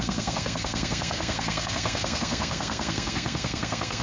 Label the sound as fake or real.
fake